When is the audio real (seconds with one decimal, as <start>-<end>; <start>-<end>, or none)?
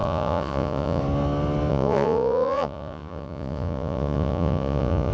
1.0-1.7